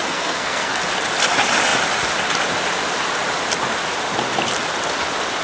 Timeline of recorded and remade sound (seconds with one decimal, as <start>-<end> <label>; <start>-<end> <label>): 0.0-0.8 remade; 0.8-5.4 recorded